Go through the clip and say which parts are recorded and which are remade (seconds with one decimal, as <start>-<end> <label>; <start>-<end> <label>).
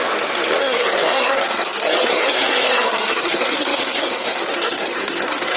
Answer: 0.0-0.6 recorded; 0.6-5.6 remade